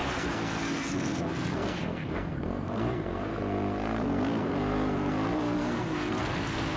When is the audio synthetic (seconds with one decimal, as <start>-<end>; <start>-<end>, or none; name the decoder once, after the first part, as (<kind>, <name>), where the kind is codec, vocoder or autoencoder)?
0.0-6.8 (codec, SNAC)